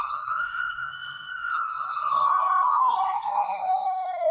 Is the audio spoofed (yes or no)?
yes